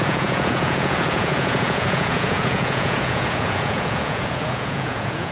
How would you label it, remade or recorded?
remade